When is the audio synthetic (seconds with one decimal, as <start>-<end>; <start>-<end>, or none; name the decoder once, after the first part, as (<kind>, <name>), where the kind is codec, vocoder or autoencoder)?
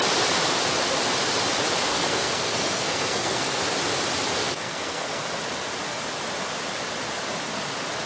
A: 1.9-3.6 (codec, SNAC); 4.4-5.2